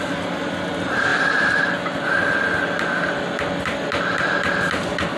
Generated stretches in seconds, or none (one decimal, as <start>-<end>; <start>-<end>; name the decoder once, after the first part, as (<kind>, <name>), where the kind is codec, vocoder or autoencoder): none